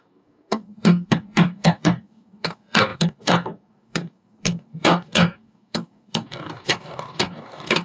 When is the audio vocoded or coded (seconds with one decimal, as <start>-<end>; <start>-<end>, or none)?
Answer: 0.0-7.8